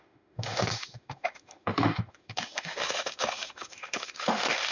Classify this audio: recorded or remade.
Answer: remade